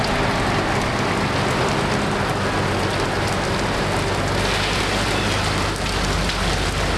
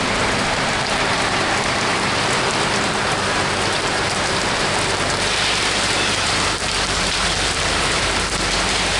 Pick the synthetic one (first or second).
second